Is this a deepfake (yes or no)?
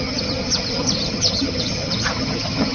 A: yes